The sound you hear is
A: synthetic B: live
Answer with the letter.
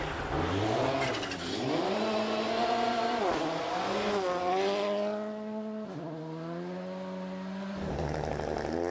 B